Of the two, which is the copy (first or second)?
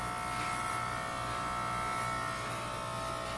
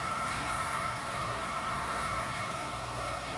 second